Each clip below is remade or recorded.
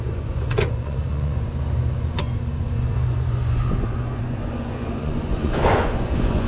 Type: remade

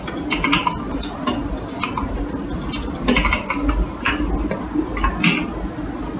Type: recorded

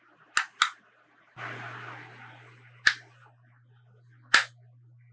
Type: recorded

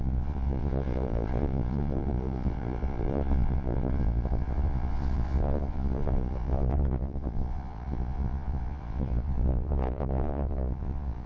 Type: remade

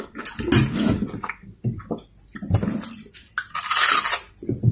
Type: recorded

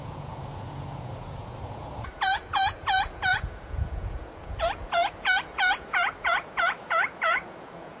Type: remade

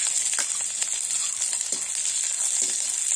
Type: recorded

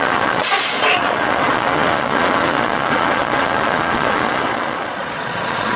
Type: remade